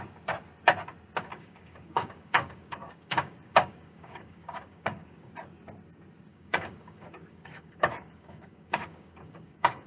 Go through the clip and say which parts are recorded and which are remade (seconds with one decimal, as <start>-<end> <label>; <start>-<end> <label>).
0.0-1.3 recorded; 1.3-5.3 remade; 5.3-6.3 recorded; 6.3-9.9 remade

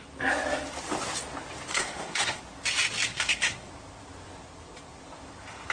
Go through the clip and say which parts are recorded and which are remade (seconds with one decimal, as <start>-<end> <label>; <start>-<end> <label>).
0.0-1.7 recorded; 1.7-2.4 remade; 2.4-3.1 recorded; 3.1-3.7 remade; 3.7-5.7 recorded

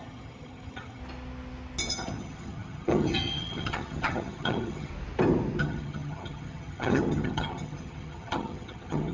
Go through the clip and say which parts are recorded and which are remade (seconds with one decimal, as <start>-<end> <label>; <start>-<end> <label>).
0.0-1.0 remade; 1.0-1.9 recorded; 1.9-4.9 remade; 4.9-5.6 recorded; 5.6-9.1 remade

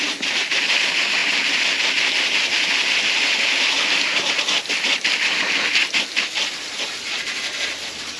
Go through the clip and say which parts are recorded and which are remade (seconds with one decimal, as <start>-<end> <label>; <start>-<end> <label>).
0.0-8.2 recorded

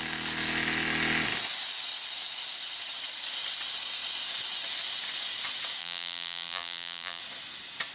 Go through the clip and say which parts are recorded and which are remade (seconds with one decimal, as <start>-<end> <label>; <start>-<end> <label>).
0.0-5.8 recorded; 5.8-7.2 remade; 7.2-7.9 recorded

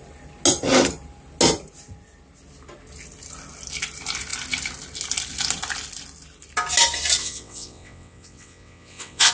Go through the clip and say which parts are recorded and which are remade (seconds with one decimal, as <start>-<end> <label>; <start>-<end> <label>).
0.0-7.2 recorded; 7.2-9.3 remade

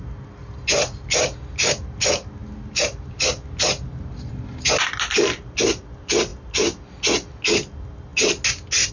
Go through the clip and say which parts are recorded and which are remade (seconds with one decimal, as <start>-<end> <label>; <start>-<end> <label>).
0.0-8.9 recorded